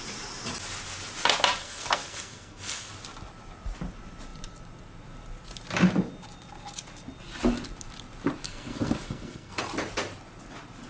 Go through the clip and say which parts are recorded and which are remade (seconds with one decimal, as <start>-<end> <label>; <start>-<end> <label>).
0.0-1.6 recorded; 1.6-2.9 remade; 2.9-8.4 recorded; 8.4-9.6 remade; 9.6-10.9 recorded